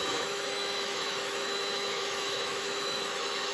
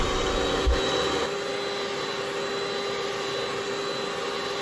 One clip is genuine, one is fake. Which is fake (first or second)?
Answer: first